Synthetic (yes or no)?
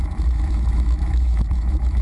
yes